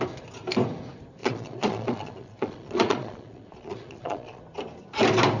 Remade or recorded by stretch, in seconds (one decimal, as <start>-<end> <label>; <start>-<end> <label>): 0.0-1.2 recorded; 1.2-4.4 remade; 4.4-5.4 recorded